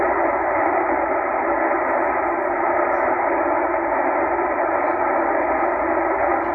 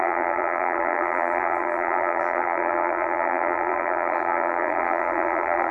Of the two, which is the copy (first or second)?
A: second